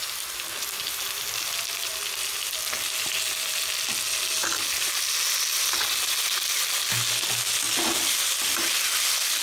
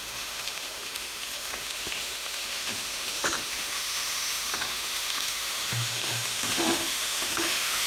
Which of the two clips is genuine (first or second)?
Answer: first